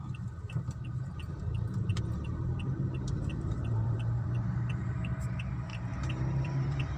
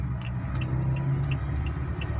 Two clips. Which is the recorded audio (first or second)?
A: second